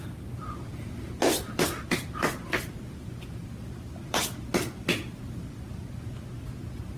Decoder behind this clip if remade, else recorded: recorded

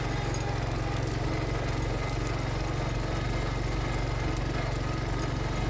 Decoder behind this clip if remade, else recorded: recorded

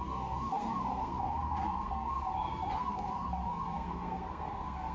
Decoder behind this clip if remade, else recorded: remade, codec, SNAC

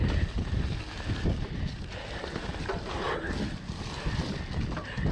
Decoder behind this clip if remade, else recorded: recorded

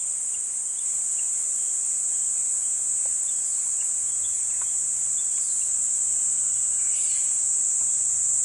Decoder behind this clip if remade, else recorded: recorded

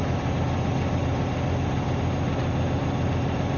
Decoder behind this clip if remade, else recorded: recorded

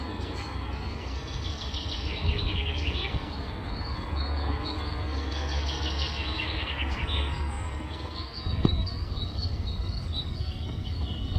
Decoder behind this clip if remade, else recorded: remade, codec, SNAC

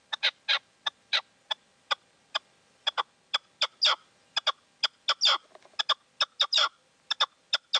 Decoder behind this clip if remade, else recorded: recorded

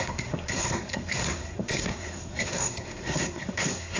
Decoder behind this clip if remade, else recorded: remade, codec, SNAC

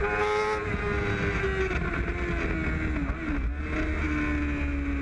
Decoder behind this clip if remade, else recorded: recorded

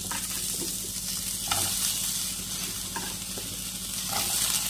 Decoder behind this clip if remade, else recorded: recorded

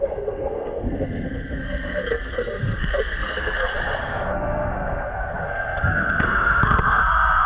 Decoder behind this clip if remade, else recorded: remade, codec, SNAC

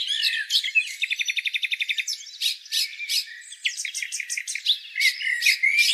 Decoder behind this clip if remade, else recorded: recorded